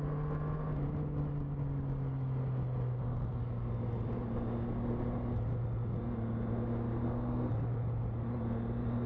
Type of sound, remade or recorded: recorded